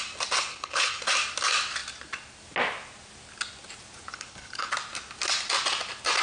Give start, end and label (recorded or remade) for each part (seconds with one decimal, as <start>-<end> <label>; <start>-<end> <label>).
0.0-0.5 recorded; 0.5-1.0 remade; 1.0-4.1 recorded; 4.1-4.7 remade; 4.7-6.2 recorded